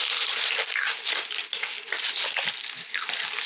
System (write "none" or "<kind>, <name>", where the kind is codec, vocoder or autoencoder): none